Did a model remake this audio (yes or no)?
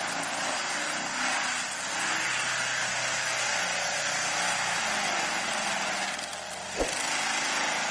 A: no